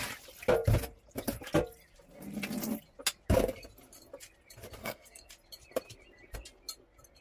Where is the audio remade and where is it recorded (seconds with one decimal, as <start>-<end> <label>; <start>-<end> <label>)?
0.0-4.8 recorded; 4.8-5.3 remade; 5.3-7.2 recorded